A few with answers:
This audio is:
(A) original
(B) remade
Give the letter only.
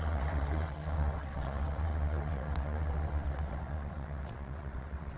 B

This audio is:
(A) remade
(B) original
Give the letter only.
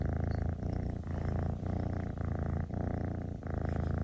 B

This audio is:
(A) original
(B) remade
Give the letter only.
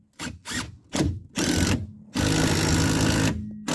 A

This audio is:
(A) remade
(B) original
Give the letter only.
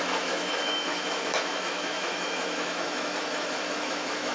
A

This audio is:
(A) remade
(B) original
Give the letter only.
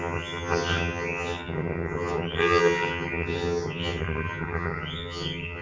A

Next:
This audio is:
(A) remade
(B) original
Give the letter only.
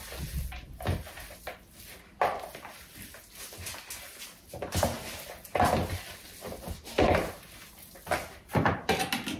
B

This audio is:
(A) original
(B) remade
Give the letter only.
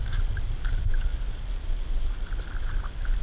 A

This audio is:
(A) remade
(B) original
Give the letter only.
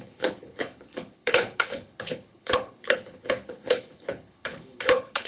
A